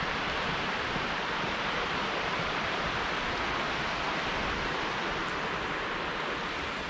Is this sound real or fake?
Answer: real